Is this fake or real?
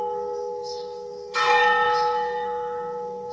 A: fake